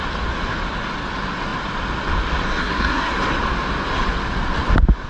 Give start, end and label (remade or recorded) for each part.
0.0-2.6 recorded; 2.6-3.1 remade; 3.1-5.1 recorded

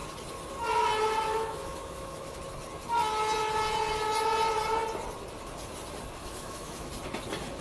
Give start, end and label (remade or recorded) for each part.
0.0-1.3 recorded; 1.3-2.4 remade; 2.4-6.2 recorded; 6.2-6.9 remade; 6.9-7.6 recorded